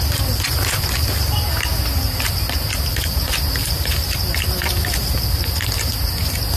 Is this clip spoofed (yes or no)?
no